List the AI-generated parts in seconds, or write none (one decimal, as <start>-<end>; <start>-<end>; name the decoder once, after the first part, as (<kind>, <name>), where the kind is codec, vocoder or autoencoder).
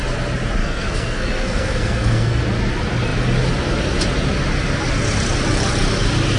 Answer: 0.6-2.4 (codec, SNAC)